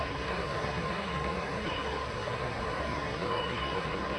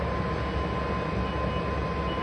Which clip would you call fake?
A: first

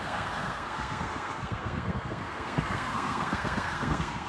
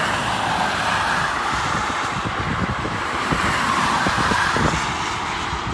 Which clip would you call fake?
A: first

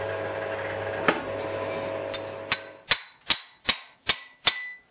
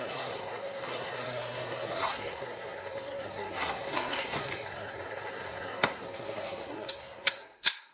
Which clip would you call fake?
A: second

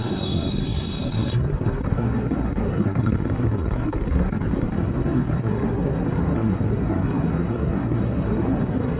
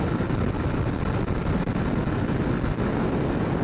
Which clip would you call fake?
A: first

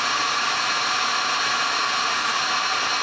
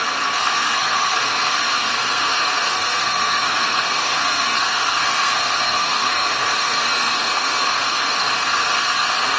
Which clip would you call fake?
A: second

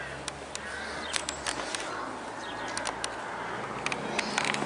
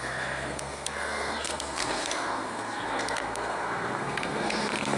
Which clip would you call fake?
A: second